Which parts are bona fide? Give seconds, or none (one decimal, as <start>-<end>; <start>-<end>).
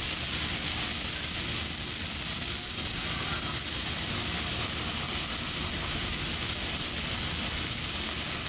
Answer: 0.0-8.5